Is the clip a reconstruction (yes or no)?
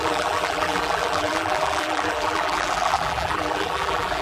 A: yes